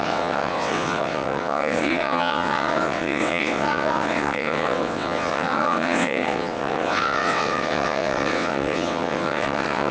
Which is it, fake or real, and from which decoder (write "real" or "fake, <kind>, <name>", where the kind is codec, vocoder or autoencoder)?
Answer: fake, vocoder, WaveNeXt